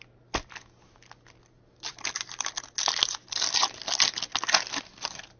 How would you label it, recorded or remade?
recorded